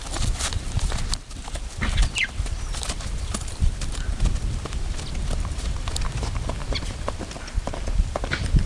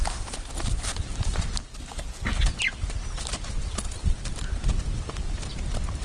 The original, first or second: second